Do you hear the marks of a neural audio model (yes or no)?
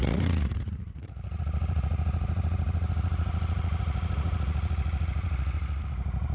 yes